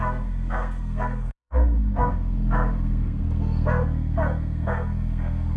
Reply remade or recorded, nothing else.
remade